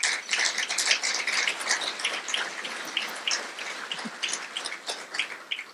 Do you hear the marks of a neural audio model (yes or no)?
no